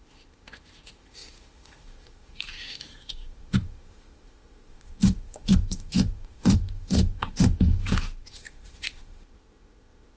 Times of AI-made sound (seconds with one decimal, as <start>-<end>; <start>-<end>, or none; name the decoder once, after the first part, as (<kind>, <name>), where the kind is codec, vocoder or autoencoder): 0.0-10.2 (autoencoder, DAC-VAE)